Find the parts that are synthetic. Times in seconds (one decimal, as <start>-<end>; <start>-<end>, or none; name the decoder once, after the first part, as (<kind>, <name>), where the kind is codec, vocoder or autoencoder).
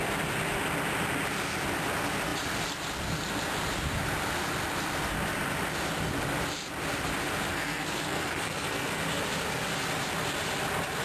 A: 7.5-9.0 (codec, SNAC)